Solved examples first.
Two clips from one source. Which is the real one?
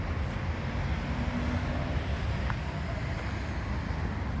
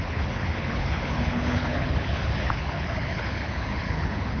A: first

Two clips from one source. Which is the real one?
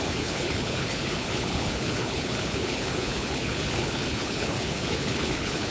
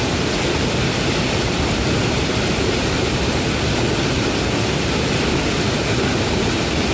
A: second